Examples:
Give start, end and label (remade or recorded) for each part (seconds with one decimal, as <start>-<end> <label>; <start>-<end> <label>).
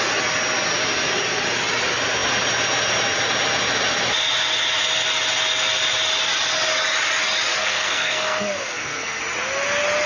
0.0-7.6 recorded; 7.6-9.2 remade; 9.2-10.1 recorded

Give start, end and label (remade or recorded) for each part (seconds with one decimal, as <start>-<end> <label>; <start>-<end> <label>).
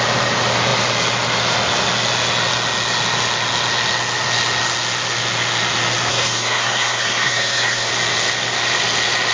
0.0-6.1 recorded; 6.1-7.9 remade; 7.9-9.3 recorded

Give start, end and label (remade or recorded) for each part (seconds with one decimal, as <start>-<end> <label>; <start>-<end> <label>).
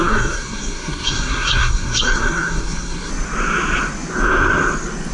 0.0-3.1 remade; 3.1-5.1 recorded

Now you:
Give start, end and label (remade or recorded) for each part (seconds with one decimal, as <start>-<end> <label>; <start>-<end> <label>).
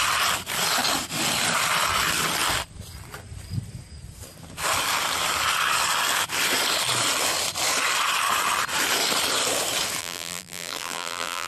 0.0-10.0 recorded; 10.0-11.5 remade